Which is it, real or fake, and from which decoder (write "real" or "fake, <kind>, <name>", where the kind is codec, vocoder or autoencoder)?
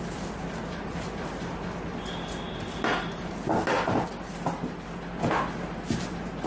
real